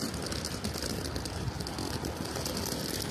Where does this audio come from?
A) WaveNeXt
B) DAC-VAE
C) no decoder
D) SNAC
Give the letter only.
C